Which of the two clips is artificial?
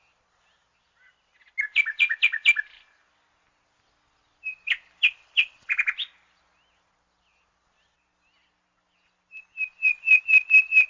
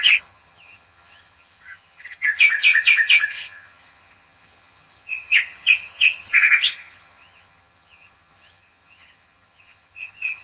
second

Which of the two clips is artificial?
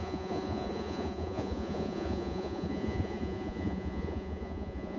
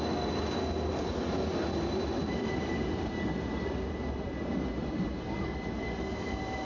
first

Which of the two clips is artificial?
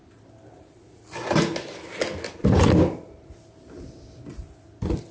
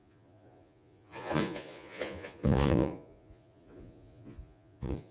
second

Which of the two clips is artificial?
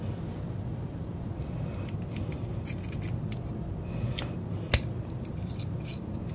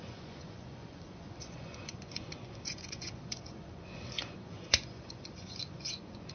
second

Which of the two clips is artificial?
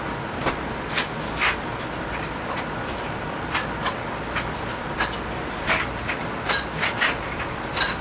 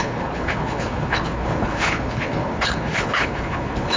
second